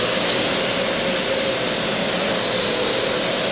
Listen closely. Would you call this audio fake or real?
real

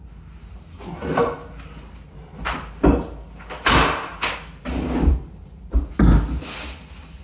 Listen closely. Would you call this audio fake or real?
real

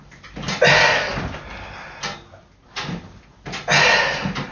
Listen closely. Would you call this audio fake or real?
real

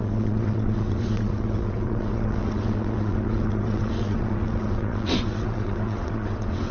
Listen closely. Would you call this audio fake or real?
fake